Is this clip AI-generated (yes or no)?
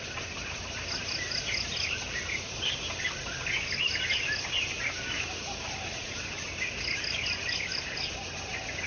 no